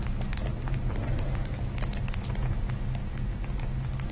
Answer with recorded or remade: recorded